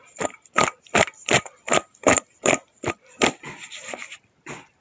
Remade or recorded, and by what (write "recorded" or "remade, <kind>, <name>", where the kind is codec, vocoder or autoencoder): recorded